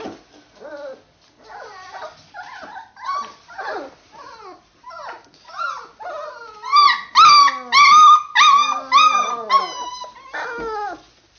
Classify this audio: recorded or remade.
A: recorded